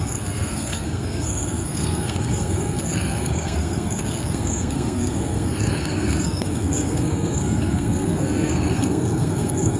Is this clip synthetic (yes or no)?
yes